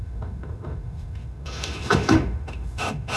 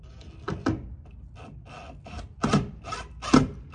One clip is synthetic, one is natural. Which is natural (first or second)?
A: second